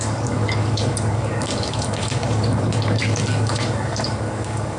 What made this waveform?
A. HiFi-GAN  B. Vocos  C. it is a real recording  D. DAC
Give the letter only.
D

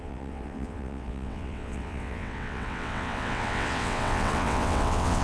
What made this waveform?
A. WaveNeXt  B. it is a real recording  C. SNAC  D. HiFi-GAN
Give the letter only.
A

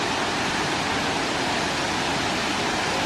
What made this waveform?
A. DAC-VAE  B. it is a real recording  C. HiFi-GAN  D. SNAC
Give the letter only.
B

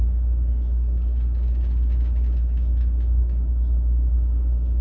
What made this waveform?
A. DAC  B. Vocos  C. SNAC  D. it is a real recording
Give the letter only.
A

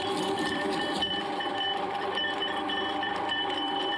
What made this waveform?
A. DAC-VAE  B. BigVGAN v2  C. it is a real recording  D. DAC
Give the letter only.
B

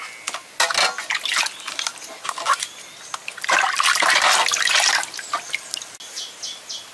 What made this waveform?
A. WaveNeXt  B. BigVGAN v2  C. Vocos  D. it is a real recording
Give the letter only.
D